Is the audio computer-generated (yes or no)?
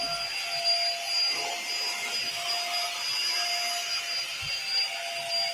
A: no